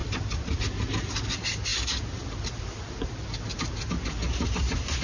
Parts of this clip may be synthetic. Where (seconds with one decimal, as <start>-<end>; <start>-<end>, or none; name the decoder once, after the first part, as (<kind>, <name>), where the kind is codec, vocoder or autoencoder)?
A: none